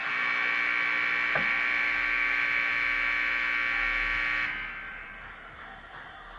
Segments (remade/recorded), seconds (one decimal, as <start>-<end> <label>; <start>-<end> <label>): 0.0-4.9 recorded; 4.9-5.6 remade; 5.6-6.4 recorded